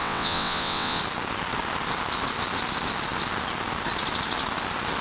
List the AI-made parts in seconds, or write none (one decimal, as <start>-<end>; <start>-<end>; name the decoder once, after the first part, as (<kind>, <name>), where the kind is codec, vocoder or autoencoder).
0.0-1.0 (vocoder, WaveNeXt)